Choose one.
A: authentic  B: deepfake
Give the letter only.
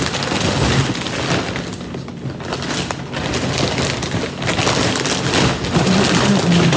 A